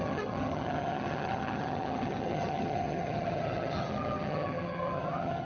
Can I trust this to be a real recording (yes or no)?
no